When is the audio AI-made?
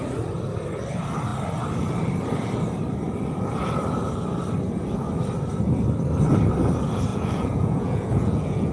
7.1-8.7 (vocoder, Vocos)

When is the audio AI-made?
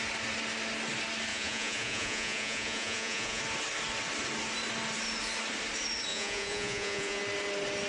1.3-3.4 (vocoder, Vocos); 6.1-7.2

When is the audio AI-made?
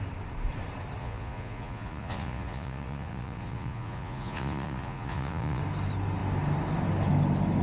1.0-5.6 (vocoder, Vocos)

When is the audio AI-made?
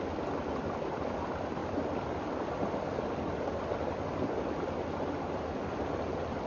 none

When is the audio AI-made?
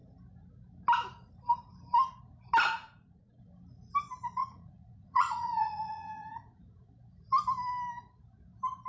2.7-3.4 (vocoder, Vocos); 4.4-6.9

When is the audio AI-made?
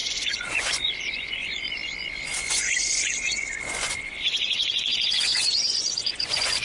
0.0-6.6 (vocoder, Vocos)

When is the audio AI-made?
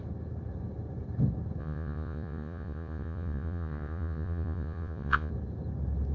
1.6-5.3 (vocoder, Vocos)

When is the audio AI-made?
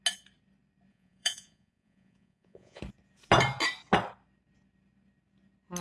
0.9-2.8 (vocoder, Vocos)